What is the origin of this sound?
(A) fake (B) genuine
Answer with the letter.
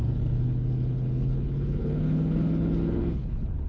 A